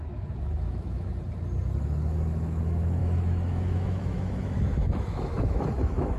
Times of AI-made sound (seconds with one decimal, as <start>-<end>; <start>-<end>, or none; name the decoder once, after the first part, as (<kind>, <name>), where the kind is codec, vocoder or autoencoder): 0.0-1.1 (autoencoder, DAC-VAE); 1.8-6.2